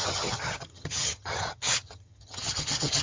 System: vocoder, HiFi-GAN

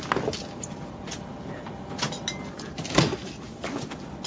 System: none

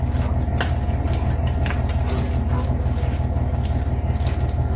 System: none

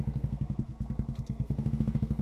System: codec, SNAC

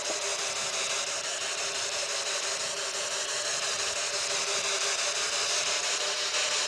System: none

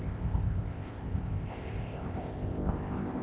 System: codec, ZipCodec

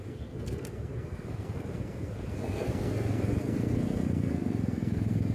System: codec, SNAC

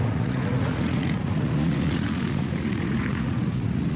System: vocoder, Vocos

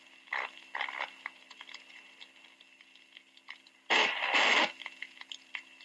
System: none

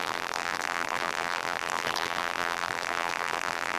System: vocoder, BigVGAN v2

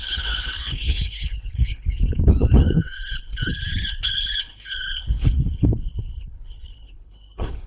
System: codec, HILCodec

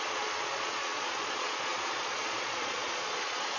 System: vocoder, Vocos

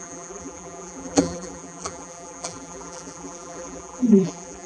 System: vocoder, BigVGAN v2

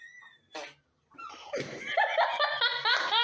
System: none